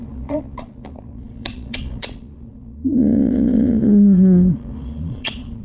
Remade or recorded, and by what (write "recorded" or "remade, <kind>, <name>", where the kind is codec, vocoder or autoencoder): remade, vocoder, Vocos